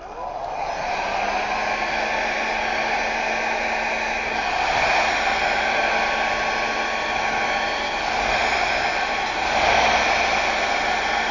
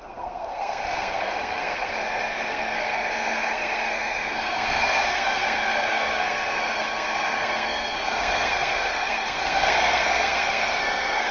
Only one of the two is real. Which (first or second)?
first